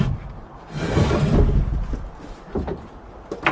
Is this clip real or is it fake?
real